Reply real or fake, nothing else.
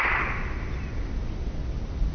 real